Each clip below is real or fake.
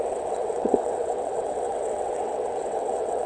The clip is fake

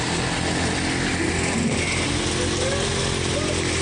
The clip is real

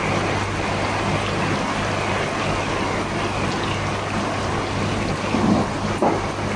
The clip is real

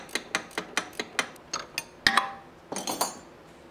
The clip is real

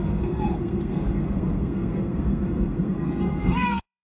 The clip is fake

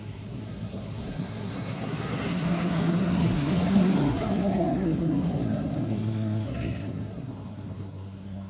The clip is fake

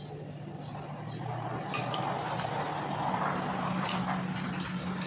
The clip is real